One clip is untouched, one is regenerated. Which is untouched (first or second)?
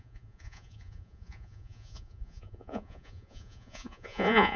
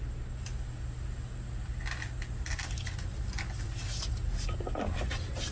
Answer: second